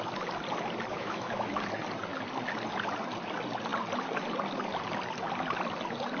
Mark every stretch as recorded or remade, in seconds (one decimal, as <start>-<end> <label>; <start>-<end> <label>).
0.0-0.9 recorded; 0.9-1.6 remade; 1.6-6.2 recorded